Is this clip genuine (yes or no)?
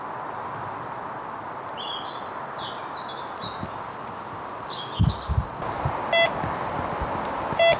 yes